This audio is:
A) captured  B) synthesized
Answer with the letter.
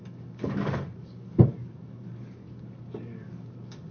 B